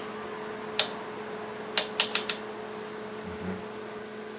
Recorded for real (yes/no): yes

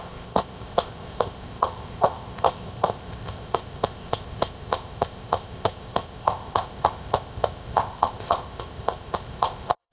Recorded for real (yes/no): no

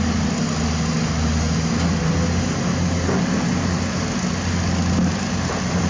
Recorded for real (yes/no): yes